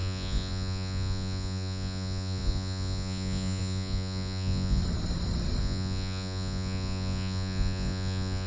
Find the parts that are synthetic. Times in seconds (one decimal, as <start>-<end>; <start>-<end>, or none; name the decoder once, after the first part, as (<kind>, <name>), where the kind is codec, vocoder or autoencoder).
0.0-4.8 (vocoder, Vocos); 5.6-8.5